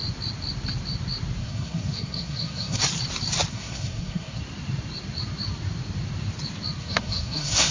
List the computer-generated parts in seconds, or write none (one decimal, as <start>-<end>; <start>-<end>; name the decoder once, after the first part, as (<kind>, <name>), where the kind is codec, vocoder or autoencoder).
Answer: 1.4-2.8 (codec, SNAC); 3.5-4.4; 6.8-7.7